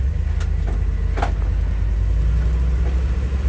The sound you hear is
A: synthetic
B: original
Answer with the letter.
B